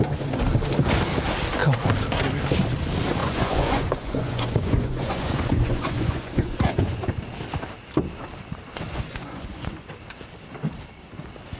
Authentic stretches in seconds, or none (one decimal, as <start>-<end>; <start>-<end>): 0.0-3.2; 7.1-8.9; 9.9-11.6